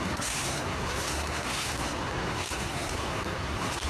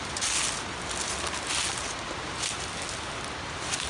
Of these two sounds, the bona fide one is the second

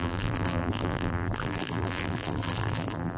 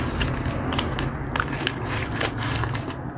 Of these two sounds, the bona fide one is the second